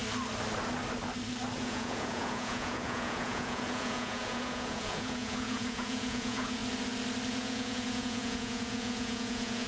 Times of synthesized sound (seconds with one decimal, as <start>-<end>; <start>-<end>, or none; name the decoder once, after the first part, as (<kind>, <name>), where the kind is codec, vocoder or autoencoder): 1.6-6.6 (vocoder, Vocos); 7.3-9.7